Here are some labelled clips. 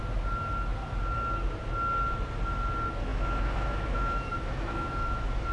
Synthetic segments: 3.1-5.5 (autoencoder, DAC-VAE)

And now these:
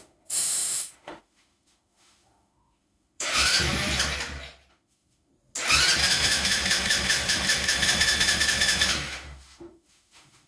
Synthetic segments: 0.0-3.6 (autoencoder, DAC-VAE); 4.7-5.3; 6.1-10.5